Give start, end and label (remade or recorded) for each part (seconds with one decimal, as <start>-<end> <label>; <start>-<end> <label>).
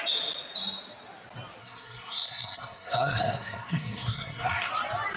0.0-1.6 recorded; 1.6-4.7 remade; 4.7-5.2 recorded